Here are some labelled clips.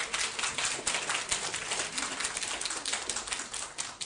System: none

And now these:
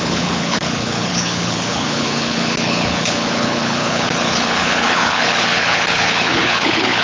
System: codec, HILCodec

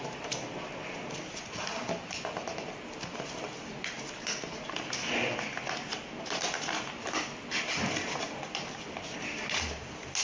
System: none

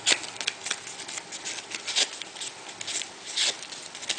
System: none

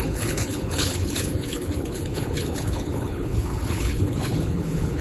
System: codec, HILCodec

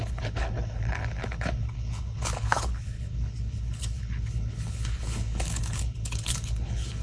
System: codec, HILCodec